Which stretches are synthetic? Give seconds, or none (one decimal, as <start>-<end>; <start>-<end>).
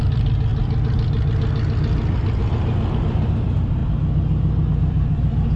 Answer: 0.0-0.5; 2.4-3.8; 4.7-5.6